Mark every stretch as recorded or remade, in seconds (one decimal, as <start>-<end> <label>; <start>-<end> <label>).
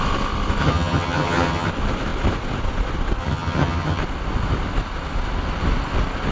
0.0-0.6 recorded; 0.6-1.7 remade; 1.7-3.2 recorded; 3.2-4.0 remade; 4.0-6.3 recorded